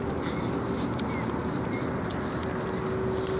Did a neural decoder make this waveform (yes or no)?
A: no